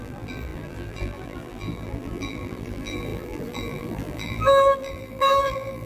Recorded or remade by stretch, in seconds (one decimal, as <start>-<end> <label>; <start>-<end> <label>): 0.0-5.9 remade